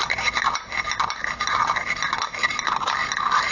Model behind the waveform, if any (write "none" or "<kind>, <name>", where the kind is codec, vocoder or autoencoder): none